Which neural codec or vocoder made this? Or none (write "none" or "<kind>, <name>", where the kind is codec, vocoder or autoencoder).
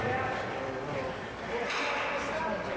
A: none